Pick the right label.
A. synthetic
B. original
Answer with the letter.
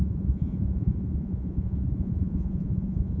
A